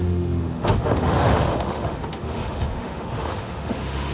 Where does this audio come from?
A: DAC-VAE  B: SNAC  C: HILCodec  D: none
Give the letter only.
A